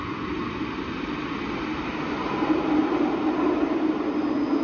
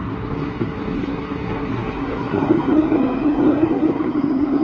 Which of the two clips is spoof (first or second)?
second